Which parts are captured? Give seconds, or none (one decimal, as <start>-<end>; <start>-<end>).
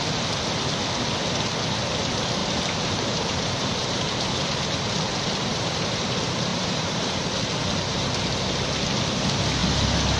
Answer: 0.0-2.4; 4.6-5.5; 6.0-6.5; 7.1-10.2